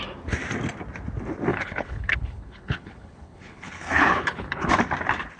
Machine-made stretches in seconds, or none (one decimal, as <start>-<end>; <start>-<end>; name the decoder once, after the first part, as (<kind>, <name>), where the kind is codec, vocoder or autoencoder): 1.5-4.7 (codec, HILCodec)